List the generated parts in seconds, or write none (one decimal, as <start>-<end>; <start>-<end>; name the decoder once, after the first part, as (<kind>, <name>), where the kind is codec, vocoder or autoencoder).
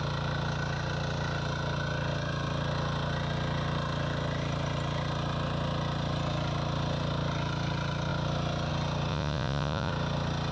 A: 9.1-9.9 (vocoder, Vocos)